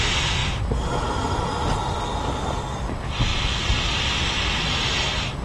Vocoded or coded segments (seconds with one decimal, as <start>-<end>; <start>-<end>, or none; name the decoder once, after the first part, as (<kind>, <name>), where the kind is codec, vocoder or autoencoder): none